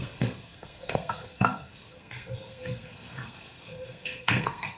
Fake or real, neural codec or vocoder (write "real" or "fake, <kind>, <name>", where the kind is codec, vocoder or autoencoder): fake, codec, SNAC